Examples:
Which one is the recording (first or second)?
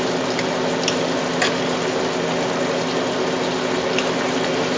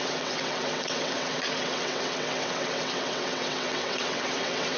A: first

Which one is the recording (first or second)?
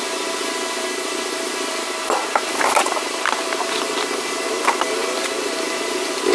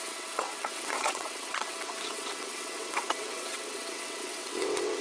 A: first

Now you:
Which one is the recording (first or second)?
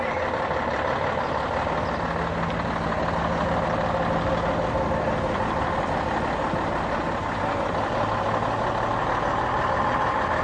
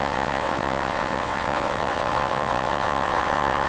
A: first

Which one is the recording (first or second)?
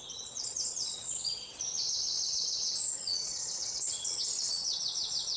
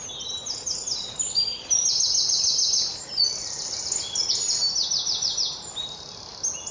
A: second